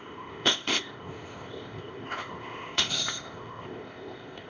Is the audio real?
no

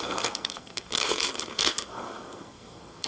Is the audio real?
no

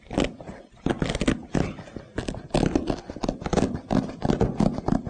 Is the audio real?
yes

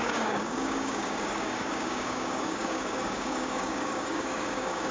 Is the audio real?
no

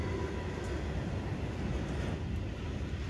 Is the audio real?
yes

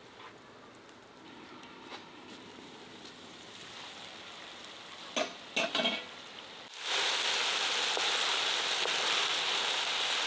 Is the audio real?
yes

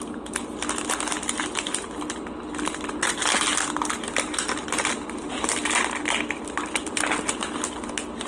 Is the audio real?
yes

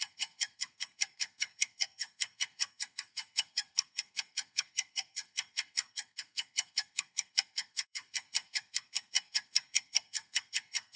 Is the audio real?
no